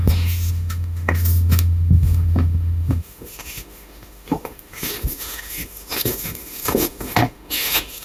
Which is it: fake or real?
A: fake